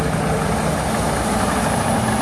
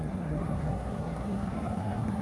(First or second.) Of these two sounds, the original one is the first